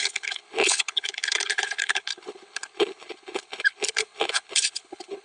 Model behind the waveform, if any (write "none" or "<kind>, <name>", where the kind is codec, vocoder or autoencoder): codec, HILCodec